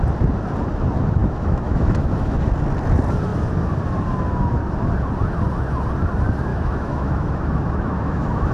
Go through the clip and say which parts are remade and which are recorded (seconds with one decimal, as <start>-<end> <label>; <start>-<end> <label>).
0.0-1.2 recorded; 1.2-2.5 remade; 2.5-6.5 recorded; 6.5-8.5 remade